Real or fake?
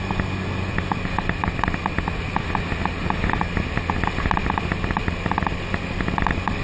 real